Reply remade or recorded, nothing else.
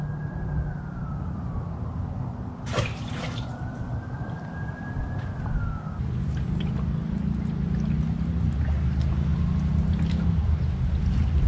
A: recorded